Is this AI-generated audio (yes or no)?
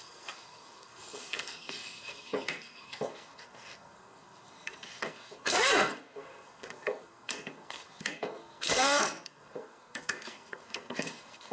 yes